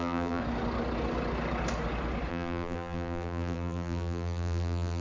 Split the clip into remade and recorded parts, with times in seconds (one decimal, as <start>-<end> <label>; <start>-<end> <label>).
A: 0.0-0.4 remade; 0.4-2.3 recorded; 2.3-5.0 remade